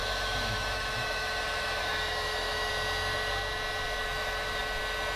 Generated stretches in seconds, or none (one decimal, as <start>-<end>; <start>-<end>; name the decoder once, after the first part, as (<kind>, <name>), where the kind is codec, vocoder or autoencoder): 0.0-2.7 (autoencoder, DAC-VAE); 4.0-4.6